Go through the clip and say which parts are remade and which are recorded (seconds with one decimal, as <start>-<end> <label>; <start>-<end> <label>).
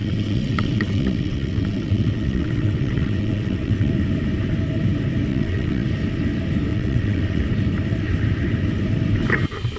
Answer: 0.0-3.9 remade; 3.9-5.3 recorded; 5.3-5.9 remade; 5.9-6.7 recorded; 6.7-7.4 remade; 7.4-9.8 recorded